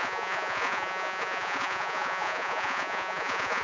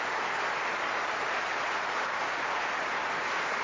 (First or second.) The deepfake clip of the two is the first